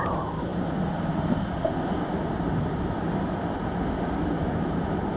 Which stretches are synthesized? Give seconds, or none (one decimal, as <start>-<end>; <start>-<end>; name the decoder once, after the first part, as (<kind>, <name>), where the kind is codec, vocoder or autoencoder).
none